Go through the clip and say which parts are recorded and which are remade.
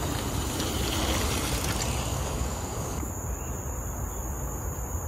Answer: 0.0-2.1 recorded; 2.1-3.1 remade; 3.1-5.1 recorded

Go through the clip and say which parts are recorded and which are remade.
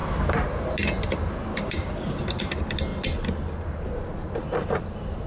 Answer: 0.0-1.5 recorded; 1.5-2.2 remade; 2.2-5.3 recorded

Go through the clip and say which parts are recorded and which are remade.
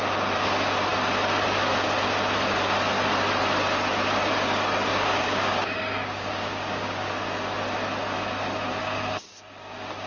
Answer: 0.0-4.9 recorded; 4.9-7.1 remade; 7.1-8.8 recorded; 8.8-10.1 remade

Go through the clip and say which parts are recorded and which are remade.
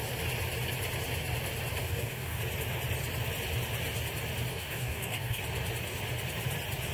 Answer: 0.0-1.8 recorded; 1.8-2.4 remade; 2.4-4.5 recorded; 4.5-5.4 remade; 5.4-6.9 recorded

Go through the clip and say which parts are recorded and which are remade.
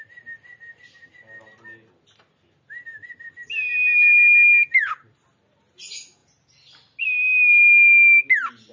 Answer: 0.0-8.7 recorded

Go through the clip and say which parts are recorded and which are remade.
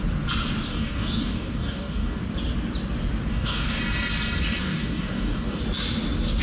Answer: 0.0-0.7 recorded; 0.7-2.2 remade; 2.2-3.3 recorded; 3.3-3.8 remade; 3.8-4.6 recorded; 4.6-5.6 remade; 5.6-6.4 recorded